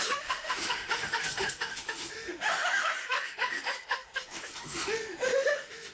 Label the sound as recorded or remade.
remade